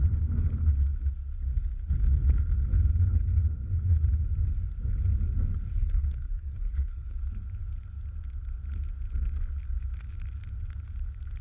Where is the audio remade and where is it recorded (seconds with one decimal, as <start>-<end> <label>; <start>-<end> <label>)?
0.0-5.7 recorded; 5.7-7.2 remade; 7.2-11.4 recorded